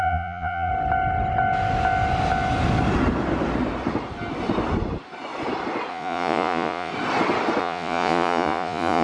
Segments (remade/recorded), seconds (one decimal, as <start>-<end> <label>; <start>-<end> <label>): 0.0-0.7 remade; 0.7-5.9 recorded; 5.9-6.9 remade; 6.9-7.6 recorded; 7.6-9.0 remade